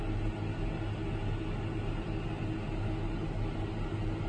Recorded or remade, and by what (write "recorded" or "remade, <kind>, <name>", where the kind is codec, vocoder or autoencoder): recorded